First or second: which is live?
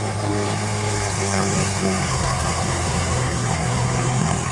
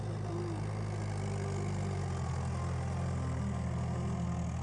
second